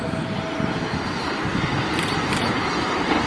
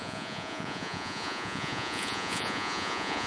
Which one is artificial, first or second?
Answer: second